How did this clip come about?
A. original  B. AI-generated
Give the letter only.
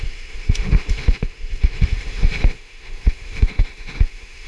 B